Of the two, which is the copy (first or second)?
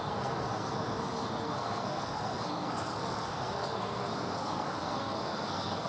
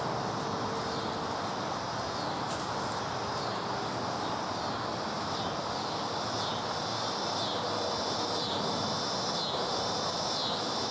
first